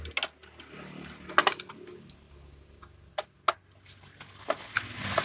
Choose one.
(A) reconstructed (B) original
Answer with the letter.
B